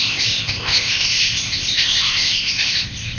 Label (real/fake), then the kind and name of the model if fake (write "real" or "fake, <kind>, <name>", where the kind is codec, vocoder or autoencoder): fake, codec, ZipCodec